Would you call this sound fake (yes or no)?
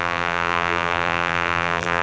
yes